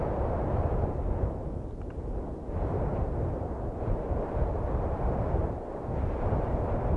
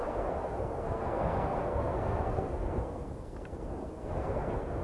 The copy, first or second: second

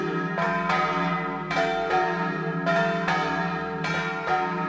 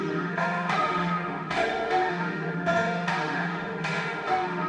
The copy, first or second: second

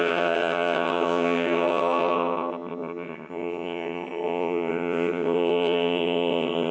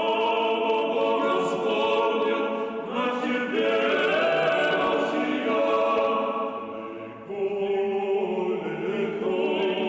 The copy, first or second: first